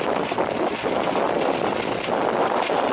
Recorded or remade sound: recorded